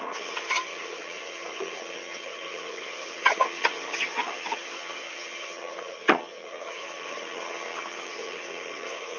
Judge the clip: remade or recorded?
remade